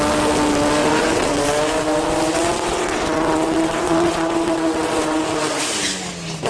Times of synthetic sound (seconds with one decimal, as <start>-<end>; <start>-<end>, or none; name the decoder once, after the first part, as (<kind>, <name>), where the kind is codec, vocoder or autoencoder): 0.8-1.4 (vocoder, WaveNeXt); 2.3-5.2